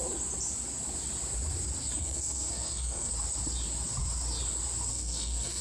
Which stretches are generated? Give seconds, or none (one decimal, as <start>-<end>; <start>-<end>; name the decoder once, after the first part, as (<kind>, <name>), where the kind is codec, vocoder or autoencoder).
2.0-3.1 (codec, SNAC); 4.9-5.6